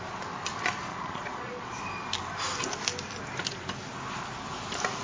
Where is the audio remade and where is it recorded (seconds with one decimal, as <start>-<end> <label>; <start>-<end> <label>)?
0.0-0.9 recorded; 0.9-1.8 remade; 1.8-5.0 recorded

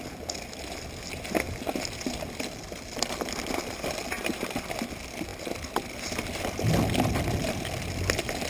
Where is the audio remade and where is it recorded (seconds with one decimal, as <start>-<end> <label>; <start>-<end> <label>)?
0.0-5.3 remade; 5.3-6.0 recorded; 6.0-8.5 remade

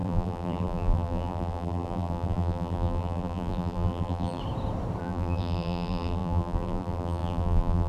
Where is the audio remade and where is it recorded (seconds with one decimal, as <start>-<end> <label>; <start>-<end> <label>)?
0.0-4.4 remade; 4.4-5.0 recorded; 5.0-7.9 remade